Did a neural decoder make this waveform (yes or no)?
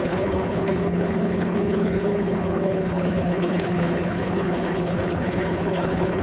yes